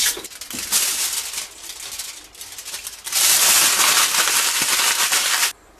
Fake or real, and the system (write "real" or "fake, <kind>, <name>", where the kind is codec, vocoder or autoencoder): real